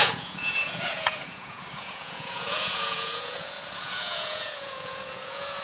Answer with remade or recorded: remade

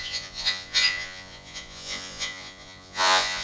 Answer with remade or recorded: remade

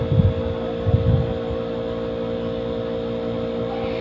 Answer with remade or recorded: recorded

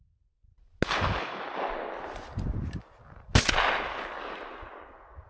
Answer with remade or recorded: recorded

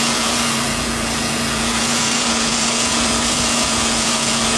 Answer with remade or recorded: remade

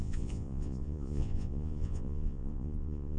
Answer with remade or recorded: remade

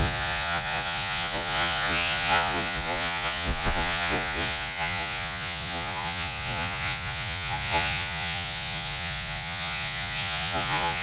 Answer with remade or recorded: remade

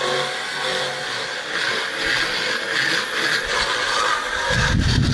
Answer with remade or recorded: recorded